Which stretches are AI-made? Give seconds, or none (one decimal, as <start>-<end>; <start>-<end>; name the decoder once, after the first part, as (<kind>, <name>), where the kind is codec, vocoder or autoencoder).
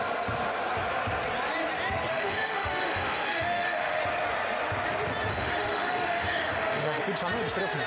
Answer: 2.1-4.0 (autoencoder, DAC-VAE); 5.3-7.0